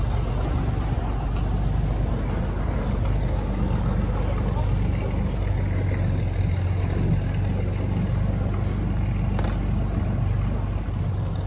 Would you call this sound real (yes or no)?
yes